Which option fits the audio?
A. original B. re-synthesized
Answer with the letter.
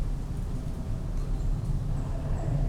A